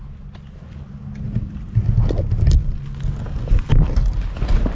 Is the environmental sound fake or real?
real